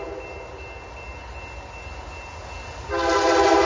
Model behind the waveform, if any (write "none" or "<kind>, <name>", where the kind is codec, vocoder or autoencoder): none